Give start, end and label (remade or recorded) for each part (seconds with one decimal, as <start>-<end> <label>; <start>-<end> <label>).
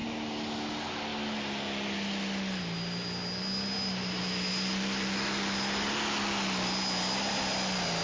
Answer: 0.0-8.0 recorded